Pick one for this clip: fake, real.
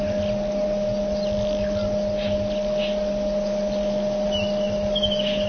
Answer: real